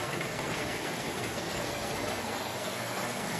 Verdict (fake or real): fake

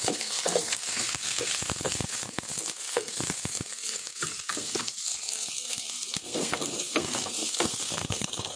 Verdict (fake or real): fake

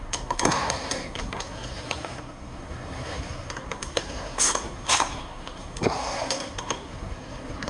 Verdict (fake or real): fake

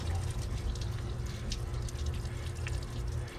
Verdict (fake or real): real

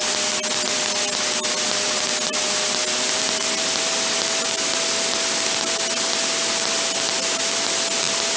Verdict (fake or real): real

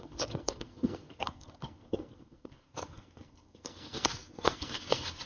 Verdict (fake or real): fake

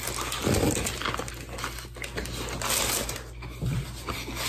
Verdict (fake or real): real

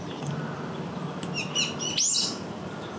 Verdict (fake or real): real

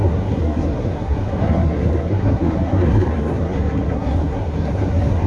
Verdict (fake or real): fake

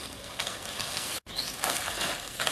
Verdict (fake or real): fake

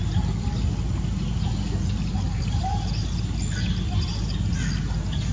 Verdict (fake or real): real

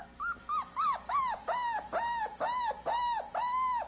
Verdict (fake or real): real